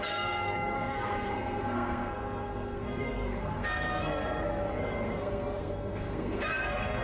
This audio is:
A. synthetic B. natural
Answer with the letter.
A